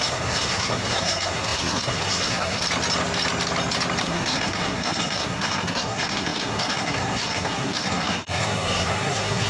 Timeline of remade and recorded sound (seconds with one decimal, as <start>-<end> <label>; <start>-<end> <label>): 0.0-2.6 remade; 2.6-4.0 recorded; 4.0-9.5 remade